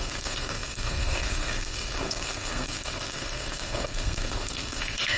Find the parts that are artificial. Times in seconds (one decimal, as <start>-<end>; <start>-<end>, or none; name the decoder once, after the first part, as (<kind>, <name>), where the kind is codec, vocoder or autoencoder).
0.0-5.2 (codec, SNAC)